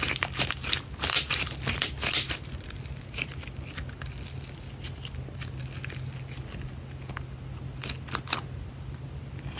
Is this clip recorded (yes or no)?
yes